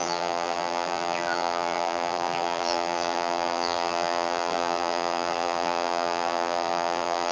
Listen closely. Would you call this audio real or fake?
fake